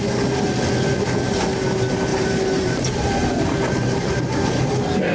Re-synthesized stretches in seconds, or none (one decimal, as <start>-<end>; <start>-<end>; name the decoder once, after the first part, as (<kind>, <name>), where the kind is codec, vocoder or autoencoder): 2.1-4.3 (vocoder, BigVGAN v2)